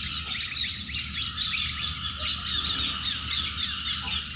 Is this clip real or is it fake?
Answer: real